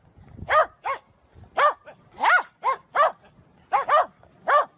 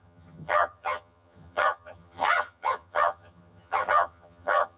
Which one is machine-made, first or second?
second